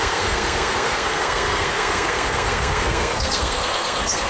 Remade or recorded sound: remade